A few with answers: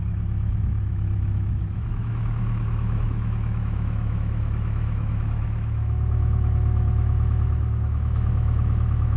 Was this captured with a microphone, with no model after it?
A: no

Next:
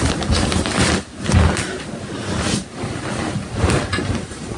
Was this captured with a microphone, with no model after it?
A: yes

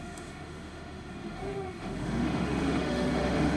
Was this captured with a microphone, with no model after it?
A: no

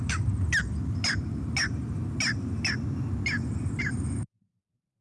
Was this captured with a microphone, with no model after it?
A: yes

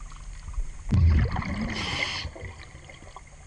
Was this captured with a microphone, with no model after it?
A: yes